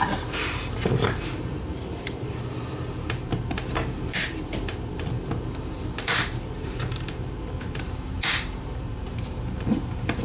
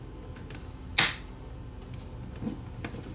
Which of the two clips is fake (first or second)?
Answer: first